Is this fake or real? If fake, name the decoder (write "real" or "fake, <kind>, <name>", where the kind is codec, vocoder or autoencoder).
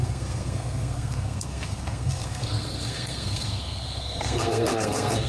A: fake, codec, SNAC